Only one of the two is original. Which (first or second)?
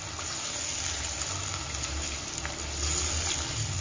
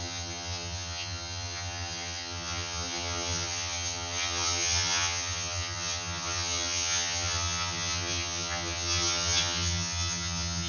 first